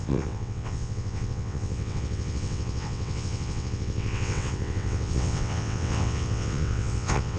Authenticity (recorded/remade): remade